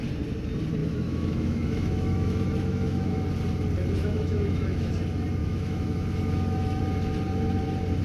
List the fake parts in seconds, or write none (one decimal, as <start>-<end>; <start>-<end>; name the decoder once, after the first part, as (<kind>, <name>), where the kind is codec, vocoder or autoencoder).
0.8-3.1 (autoencoder, DAC-VAE); 4.0-4.9; 5.4-6.8